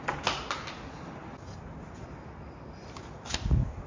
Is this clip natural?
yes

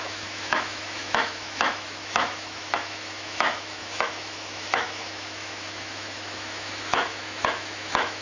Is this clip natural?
no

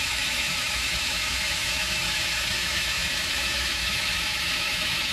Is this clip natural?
no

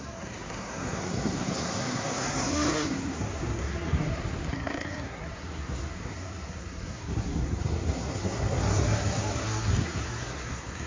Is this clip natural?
no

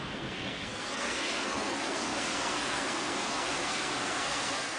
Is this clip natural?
no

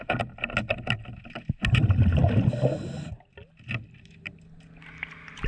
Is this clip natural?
yes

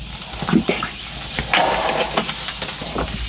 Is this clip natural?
yes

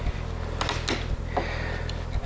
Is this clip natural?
yes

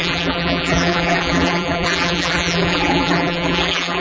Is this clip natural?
no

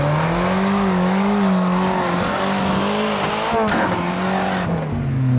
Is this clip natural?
yes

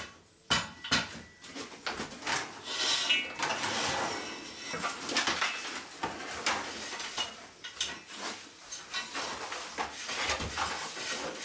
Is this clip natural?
yes